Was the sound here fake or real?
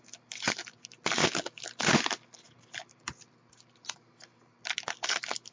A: real